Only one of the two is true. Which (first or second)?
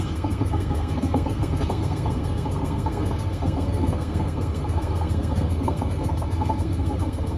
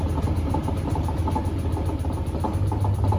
second